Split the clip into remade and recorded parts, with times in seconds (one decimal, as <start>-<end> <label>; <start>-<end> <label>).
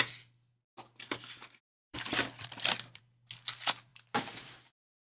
0.0-1.8 recorded; 1.8-3.0 remade; 3.0-3.9 recorded; 3.9-4.7 remade; 4.7-5.2 recorded